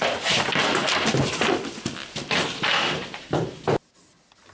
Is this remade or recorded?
recorded